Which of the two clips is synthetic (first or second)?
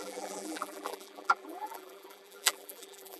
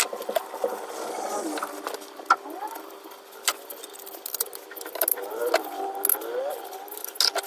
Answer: first